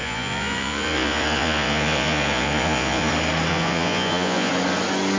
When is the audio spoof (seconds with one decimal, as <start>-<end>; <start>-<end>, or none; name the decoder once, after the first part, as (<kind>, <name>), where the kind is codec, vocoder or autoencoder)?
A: 0.0-3.1 (vocoder, Vocos); 3.5-4.5